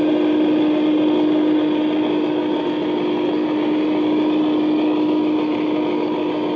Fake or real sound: real